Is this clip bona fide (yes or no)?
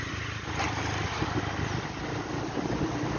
yes